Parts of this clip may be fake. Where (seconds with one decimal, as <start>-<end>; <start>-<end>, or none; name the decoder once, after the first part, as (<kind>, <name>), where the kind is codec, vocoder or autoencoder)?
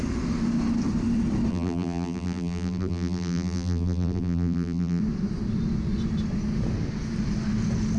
1.5-5.0 (vocoder, BigVGAN v2)